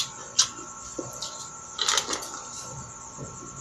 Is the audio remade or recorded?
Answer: recorded